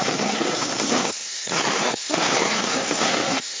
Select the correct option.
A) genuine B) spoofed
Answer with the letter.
B